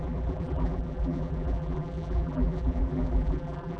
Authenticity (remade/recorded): remade